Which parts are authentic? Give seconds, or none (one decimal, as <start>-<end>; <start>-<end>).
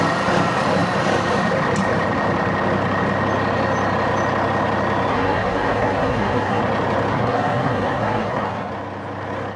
0.0-5.1; 6.6-7.1; 8.7-9.6